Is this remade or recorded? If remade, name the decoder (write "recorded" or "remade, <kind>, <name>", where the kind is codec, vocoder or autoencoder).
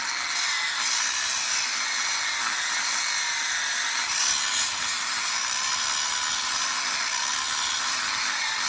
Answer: recorded